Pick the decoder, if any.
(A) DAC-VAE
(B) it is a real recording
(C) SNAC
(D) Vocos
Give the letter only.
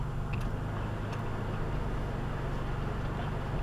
B